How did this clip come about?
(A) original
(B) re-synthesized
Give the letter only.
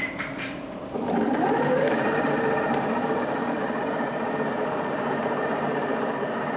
B